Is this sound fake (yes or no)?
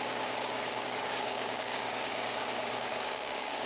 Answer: yes